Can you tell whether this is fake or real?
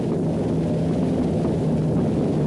real